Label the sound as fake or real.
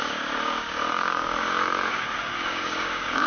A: fake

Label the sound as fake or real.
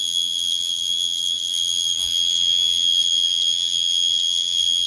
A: fake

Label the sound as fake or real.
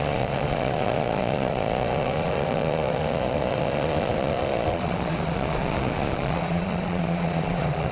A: fake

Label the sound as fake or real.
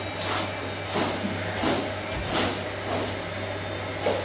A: real